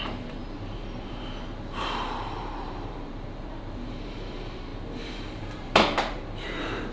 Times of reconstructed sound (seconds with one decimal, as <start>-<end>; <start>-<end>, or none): 0.0-6.9